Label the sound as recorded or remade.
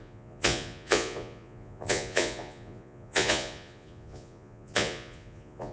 remade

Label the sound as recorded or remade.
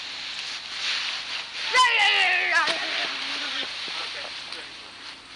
recorded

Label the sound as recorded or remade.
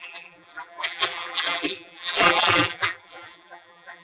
remade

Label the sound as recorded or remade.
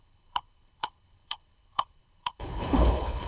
remade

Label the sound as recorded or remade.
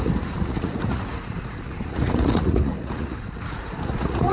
remade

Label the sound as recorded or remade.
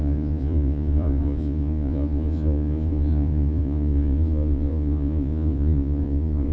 remade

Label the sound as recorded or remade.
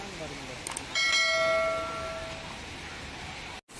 recorded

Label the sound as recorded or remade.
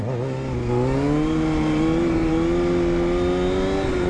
recorded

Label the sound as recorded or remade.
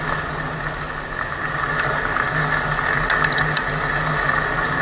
recorded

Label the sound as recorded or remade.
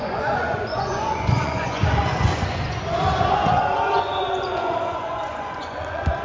remade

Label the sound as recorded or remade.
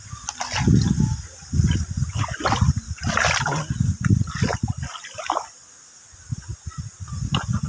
recorded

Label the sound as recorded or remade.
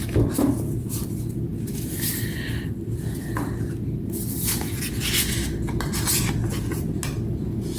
recorded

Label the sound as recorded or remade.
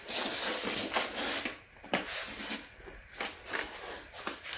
recorded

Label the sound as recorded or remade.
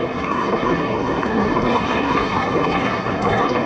remade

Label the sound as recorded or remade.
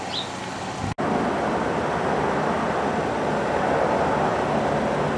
recorded